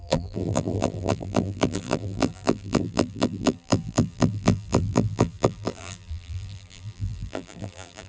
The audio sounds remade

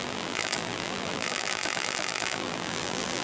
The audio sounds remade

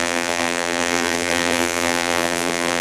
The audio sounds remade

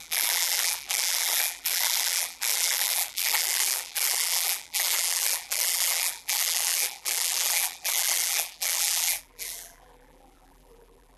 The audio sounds remade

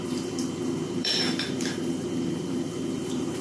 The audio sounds remade